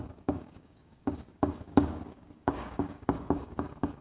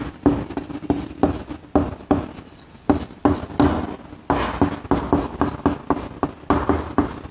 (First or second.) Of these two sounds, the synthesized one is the first